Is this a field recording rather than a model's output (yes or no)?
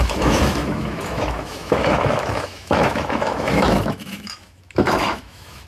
no